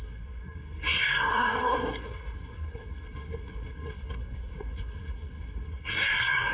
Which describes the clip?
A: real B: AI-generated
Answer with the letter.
B